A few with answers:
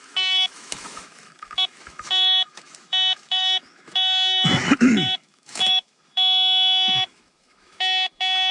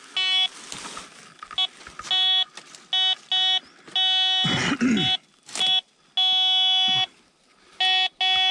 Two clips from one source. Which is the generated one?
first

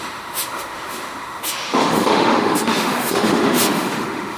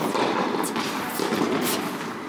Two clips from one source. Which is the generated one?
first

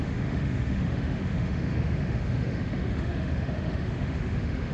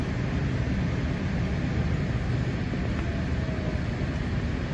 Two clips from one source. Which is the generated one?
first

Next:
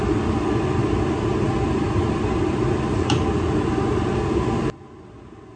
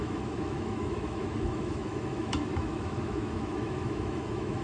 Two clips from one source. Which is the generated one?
second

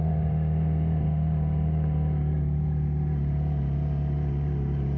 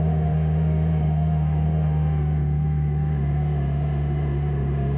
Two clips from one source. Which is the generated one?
second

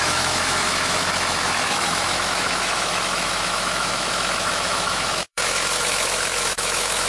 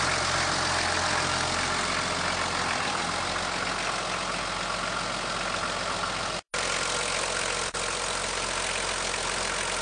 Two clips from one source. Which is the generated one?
first